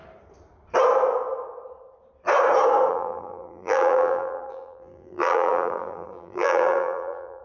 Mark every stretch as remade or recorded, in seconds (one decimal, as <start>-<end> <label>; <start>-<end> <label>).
0.0-2.9 recorded; 2.9-7.4 remade